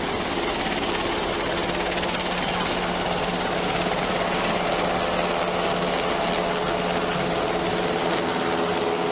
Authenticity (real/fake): real